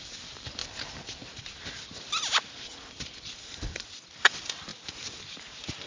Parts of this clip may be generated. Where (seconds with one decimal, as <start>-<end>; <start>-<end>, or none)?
0.0-0.6; 4.1-4.7; 5.4-5.9